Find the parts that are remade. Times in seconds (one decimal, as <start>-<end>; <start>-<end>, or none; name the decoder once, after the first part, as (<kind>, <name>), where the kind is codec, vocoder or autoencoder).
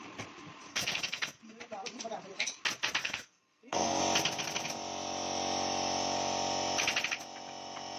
0.7-1.4 (codec, SNAC); 3.0-4.0